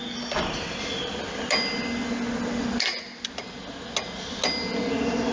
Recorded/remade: recorded